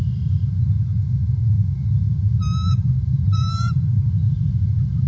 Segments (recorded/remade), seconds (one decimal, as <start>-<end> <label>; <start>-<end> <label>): 0.0-1.4 recorded; 1.4-4.5 remade; 4.5-5.1 recorded